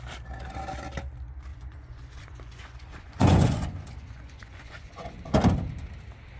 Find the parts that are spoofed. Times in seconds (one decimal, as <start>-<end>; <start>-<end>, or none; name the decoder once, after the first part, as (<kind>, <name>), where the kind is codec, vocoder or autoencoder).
1.5-5.3 (vocoder, Vocos)